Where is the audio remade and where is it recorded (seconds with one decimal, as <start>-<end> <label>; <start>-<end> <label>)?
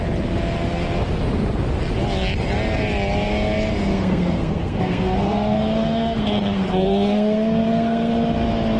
0.0-3.9 recorded; 3.9-8.1 remade; 8.1-8.8 recorded